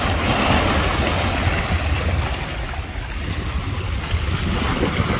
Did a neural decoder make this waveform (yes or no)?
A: no